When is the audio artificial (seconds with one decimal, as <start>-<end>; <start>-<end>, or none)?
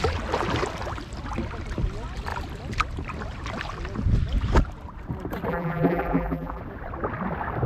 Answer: 5.5-6.6